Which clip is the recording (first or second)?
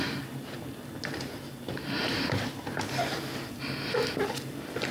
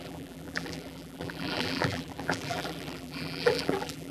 first